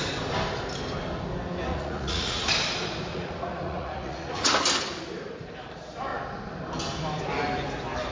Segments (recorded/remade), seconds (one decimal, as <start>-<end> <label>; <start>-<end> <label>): 0.0-1.7 recorded; 1.7-2.4 remade; 2.4-3.1 recorded; 3.1-4.5 remade; 4.5-8.1 recorded